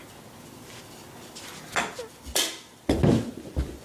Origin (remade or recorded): recorded